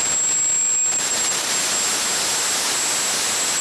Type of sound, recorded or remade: recorded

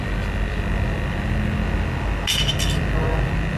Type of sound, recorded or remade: recorded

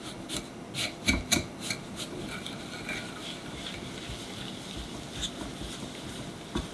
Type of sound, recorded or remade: recorded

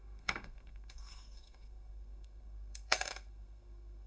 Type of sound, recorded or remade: remade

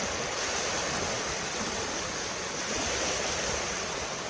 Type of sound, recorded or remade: recorded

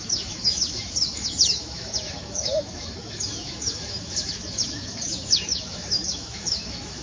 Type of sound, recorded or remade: remade